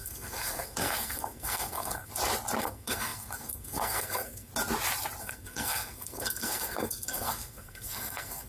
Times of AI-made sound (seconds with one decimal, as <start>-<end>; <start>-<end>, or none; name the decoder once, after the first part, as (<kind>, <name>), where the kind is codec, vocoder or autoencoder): 0.0-2.1 (codec, SNAC); 2.6-4.5; 5.2-8.5